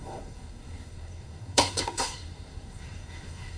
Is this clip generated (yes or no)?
yes